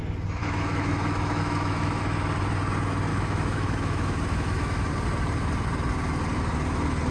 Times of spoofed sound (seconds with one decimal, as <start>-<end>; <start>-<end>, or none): 0.4-2.0; 3.1-4.9

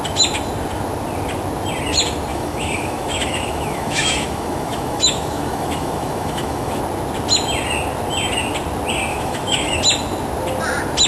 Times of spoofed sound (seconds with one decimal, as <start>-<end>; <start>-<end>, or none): 2.3-6.8; 9.1-9.8

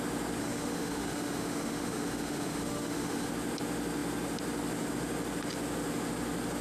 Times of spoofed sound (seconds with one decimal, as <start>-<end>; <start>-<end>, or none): 0.4-3.3

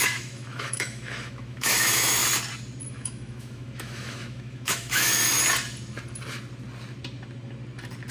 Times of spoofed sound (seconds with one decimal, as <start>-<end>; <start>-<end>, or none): 0.0-2.2; 2.9-5.2

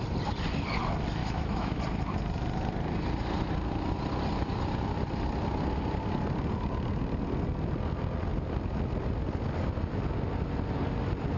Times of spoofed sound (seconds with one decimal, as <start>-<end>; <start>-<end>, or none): 1.2-1.8

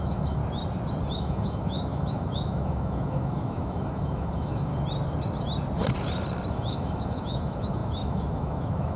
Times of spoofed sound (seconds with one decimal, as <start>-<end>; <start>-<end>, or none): 0.0-0.4; 1.1-4.7; 6.5-9.0

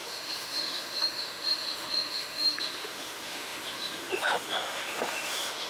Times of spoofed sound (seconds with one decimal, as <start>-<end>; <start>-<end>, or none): 0.0-5.7

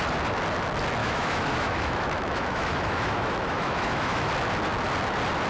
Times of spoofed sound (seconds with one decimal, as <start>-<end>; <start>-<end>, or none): 1.0-4.3